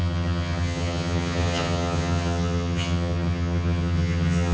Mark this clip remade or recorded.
remade